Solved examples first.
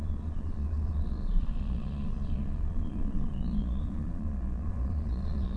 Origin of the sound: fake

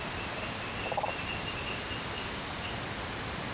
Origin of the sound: real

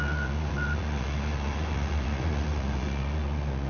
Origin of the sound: fake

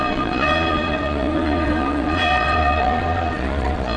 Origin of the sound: fake